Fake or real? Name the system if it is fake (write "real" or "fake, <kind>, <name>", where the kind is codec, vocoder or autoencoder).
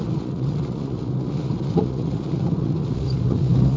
fake, vocoder, Vocos